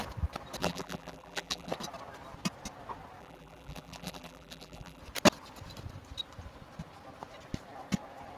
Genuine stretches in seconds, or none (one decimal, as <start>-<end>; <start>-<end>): 0.0-0.6; 1.7-3.2; 5.0-8.4